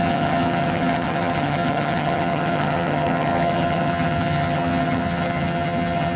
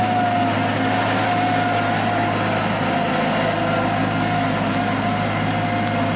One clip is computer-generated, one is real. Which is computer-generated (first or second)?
first